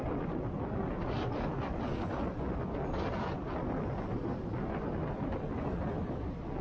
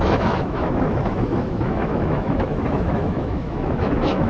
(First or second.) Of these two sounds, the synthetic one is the second